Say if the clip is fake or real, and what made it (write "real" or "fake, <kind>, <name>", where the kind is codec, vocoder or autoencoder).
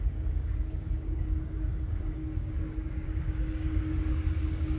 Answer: fake, codec, DAC